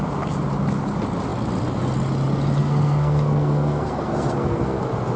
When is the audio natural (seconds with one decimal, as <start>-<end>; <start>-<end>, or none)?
0.0-2.6; 4.8-5.2